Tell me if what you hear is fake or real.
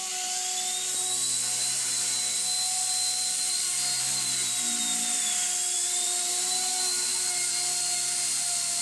real